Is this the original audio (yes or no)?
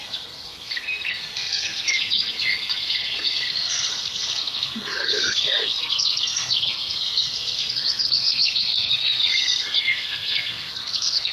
no